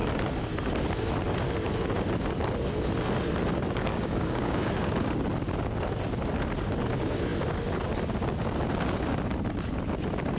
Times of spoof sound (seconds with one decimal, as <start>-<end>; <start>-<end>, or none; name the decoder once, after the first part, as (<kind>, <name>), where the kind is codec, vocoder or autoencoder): 3.9-5.2 (codec, DAC)